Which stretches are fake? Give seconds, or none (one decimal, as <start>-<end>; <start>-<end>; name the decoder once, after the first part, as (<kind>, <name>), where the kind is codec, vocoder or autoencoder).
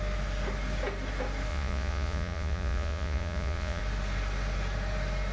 1.5-3.8 (vocoder, Vocos)